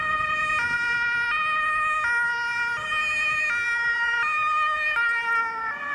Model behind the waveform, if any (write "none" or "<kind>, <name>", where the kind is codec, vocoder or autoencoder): none